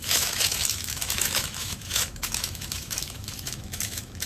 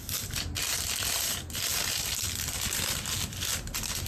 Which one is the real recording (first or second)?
second